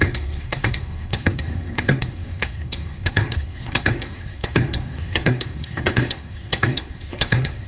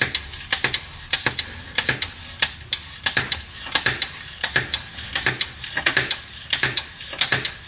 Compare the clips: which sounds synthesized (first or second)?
first